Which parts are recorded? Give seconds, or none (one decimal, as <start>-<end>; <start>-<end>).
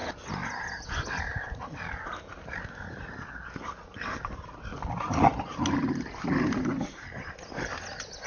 0.0-8.3